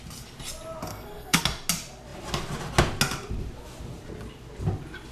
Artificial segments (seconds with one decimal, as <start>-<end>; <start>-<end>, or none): 0.9-1.4